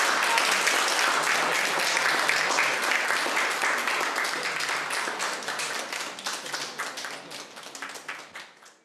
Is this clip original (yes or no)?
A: yes